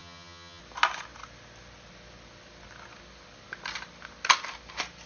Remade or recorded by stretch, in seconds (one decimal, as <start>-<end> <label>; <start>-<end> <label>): 0.0-0.6 remade; 0.6-5.1 recorded